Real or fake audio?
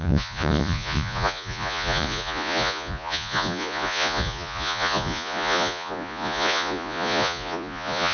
fake